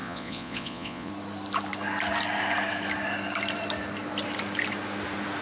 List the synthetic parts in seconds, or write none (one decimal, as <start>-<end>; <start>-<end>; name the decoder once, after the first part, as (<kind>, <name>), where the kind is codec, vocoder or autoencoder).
0.0-1.1 (vocoder, Vocos)